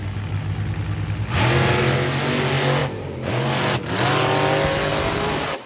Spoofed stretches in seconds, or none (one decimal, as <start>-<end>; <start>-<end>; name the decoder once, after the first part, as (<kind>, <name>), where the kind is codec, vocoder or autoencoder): 2.8-3.9 (vocoder, BigVGAN v2); 4.9-5.7